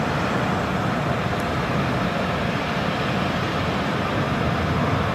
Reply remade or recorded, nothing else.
remade